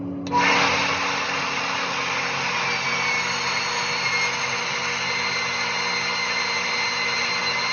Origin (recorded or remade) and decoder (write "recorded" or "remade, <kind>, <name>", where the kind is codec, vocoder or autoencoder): recorded